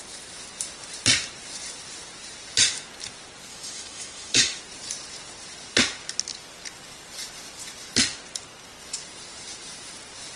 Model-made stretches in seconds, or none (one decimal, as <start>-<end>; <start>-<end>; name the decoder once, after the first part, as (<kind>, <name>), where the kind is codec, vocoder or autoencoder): 3.5-4.6 (autoencoder, DAC-VAE)